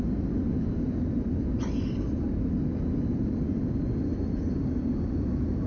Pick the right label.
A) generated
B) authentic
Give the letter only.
B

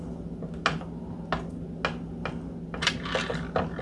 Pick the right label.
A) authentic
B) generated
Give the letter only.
A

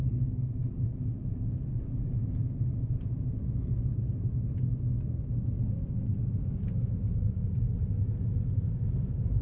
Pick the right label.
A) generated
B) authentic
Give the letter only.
B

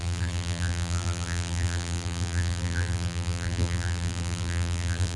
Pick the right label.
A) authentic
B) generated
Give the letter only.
B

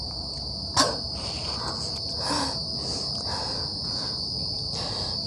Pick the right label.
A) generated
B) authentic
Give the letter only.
B